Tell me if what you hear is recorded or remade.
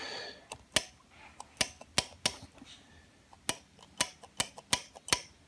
recorded